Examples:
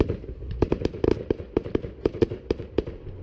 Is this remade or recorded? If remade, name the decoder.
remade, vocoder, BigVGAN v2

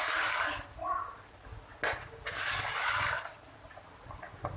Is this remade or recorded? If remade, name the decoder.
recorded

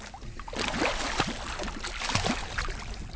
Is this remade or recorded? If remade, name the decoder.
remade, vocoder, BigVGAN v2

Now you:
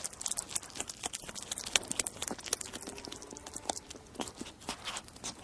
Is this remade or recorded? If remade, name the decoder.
recorded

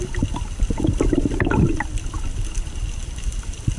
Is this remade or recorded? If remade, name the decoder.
recorded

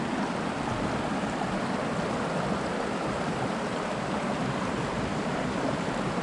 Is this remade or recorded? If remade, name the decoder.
recorded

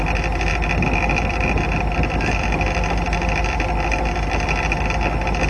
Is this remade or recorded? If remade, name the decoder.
recorded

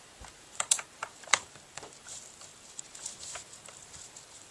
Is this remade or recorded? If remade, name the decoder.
remade, vocoder, BigVGAN v2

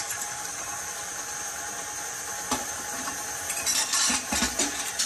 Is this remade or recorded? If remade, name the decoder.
remade, vocoder, BigVGAN v2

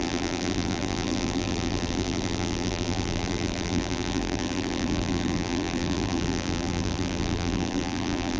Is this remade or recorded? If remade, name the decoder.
remade, vocoder, BigVGAN v2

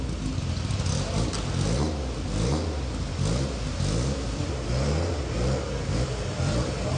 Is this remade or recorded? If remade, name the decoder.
recorded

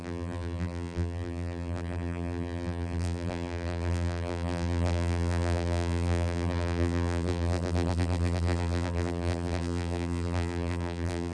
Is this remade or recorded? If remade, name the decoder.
remade, vocoder, BigVGAN v2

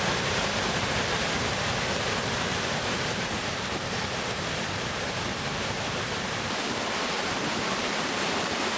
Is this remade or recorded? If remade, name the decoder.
remade, vocoder, BigVGAN v2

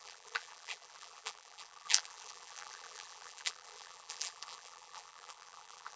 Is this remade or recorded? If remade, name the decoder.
remade, vocoder, BigVGAN v2